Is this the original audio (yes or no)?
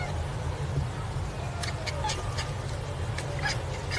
yes